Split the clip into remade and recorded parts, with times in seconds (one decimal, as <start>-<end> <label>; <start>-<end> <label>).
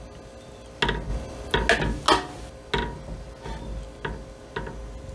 0.0-5.1 recorded